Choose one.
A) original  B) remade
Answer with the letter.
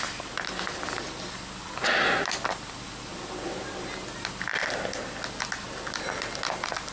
A